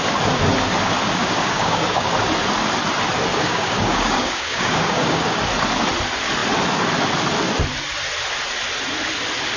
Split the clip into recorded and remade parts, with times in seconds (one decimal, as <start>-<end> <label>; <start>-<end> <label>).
0.0-1.2 recorded; 1.2-2.1 remade; 2.1-3.3 recorded; 3.3-5.4 remade; 5.4-9.6 recorded